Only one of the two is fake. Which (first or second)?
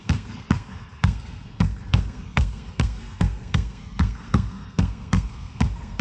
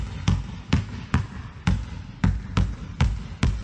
first